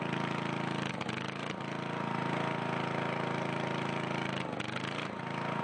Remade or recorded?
recorded